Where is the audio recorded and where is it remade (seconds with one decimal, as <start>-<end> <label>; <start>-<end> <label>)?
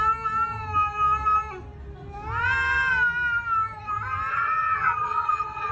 0.0-4.3 recorded; 4.3-5.7 remade